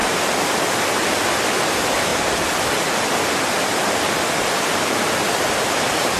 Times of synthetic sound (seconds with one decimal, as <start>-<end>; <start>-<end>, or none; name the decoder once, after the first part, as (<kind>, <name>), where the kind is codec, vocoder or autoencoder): none